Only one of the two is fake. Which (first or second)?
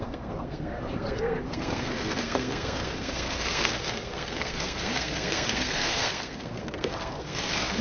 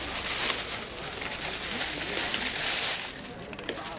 first